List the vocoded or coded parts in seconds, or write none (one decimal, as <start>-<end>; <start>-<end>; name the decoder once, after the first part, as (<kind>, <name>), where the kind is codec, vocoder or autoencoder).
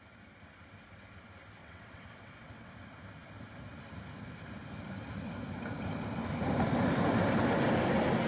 1.6-2.7 (vocoder, WaveNeXt)